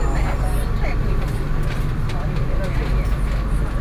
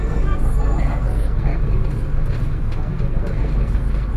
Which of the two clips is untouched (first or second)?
first